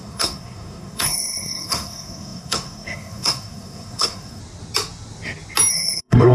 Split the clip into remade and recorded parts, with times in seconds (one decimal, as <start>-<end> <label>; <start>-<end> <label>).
0.0-4.4 remade; 4.4-5.7 recorded; 5.7-6.3 remade